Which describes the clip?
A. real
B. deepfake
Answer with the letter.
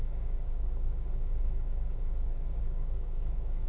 B